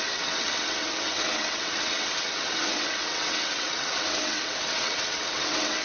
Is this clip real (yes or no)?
no